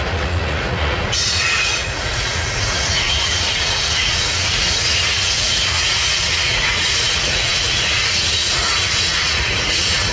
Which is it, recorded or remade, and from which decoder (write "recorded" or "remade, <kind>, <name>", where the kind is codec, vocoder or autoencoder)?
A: remade, vocoder, Vocos